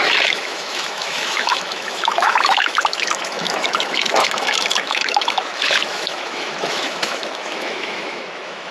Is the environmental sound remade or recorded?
remade